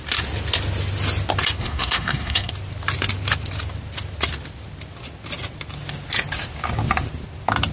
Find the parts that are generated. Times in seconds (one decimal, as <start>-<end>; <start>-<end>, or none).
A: 1.6-2.5